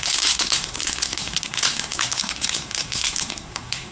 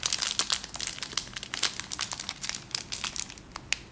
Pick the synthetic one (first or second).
first